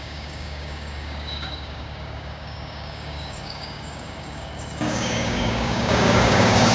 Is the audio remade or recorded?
remade